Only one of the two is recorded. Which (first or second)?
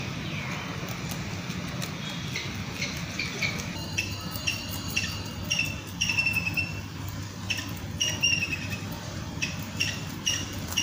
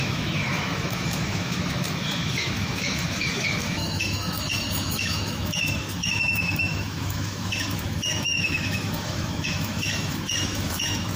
first